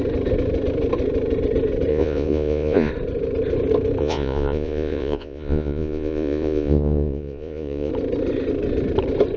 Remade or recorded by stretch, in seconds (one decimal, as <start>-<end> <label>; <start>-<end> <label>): 0.0-1.9 recorded; 1.9-2.9 remade; 2.9-4.0 recorded; 4.0-7.9 remade; 7.9-9.4 recorded